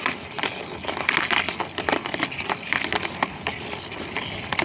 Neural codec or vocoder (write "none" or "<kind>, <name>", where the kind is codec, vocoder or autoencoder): none